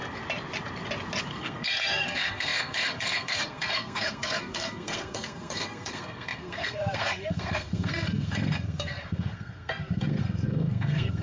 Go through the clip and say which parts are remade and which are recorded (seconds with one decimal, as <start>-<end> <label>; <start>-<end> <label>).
0.0-1.3 recorded; 1.3-11.2 remade